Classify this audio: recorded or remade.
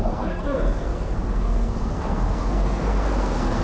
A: remade